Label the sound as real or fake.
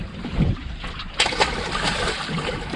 real